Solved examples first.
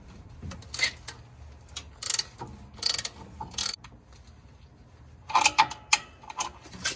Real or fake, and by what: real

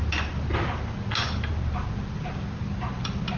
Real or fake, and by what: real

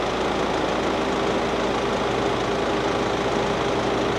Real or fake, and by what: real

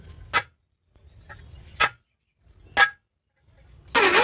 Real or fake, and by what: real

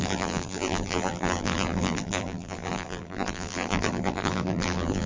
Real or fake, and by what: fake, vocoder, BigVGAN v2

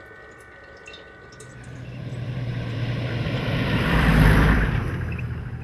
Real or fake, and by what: fake, vocoder, BigVGAN v2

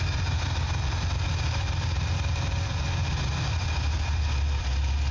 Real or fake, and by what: fake, vocoder, BigVGAN v2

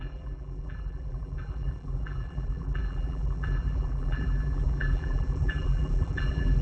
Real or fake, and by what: fake, vocoder, BigVGAN v2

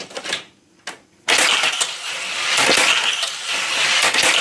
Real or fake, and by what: real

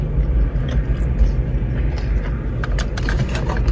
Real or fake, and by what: real